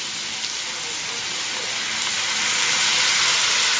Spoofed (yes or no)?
no